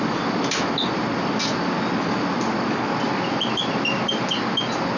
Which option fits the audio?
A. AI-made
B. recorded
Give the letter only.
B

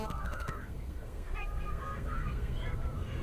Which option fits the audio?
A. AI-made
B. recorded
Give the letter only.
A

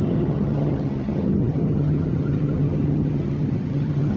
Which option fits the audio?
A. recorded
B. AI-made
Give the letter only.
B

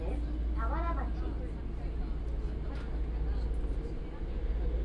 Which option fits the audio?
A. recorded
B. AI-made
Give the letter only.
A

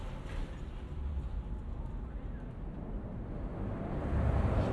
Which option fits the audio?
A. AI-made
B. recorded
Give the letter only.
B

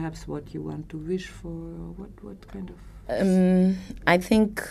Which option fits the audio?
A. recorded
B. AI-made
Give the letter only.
A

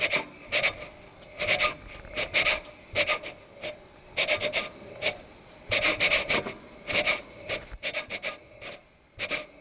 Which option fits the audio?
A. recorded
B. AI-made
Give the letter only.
A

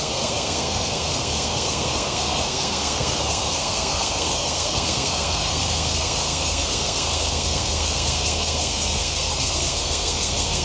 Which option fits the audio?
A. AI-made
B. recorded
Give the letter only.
A